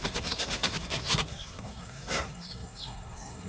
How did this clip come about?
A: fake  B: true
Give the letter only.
A